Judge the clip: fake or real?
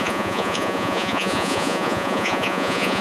fake